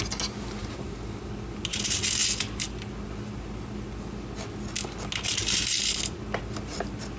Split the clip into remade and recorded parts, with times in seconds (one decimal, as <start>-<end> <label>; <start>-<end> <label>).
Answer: 0.0-7.2 recorded